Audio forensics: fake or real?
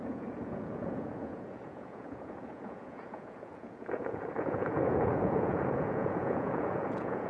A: fake